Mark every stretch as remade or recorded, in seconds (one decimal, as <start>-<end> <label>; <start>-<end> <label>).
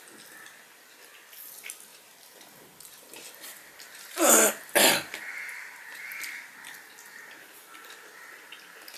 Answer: 0.0-1.9 recorded; 1.9-6.3 remade; 6.3-9.0 recorded